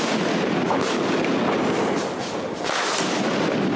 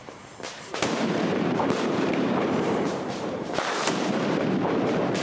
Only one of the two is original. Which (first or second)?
first